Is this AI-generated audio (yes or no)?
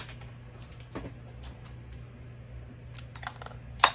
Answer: no